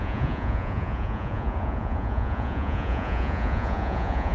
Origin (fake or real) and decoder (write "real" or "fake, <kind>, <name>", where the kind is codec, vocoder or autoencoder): fake, vocoder, Vocos